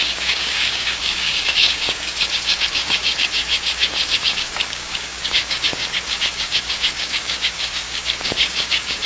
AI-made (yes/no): yes